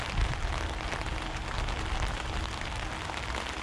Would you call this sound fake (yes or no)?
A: no